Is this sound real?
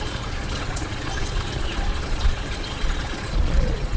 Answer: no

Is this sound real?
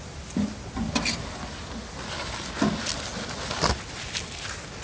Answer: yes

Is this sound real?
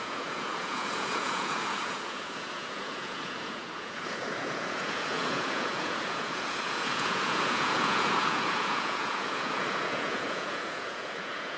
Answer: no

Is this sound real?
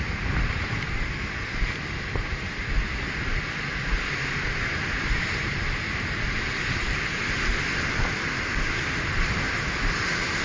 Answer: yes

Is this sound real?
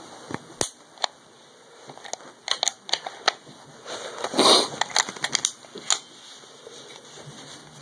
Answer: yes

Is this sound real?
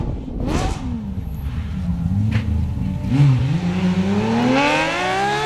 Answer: yes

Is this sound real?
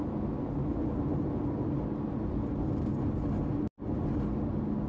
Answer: yes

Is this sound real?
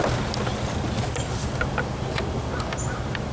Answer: yes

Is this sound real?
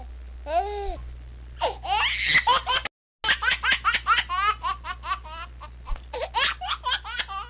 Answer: yes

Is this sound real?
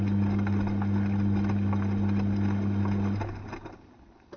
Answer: yes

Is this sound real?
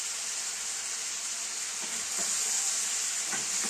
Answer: yes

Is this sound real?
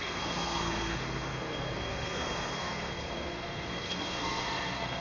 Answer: no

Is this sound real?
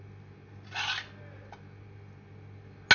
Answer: yes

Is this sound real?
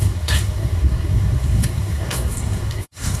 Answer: no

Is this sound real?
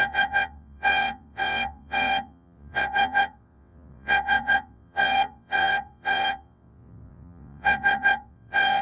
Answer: no